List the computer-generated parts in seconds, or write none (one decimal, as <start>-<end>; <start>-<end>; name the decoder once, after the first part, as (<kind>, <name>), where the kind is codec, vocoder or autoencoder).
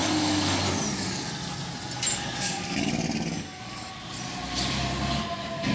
0.0-0.6 (codec, DAC); 2.1-2.9; 3.3-3.9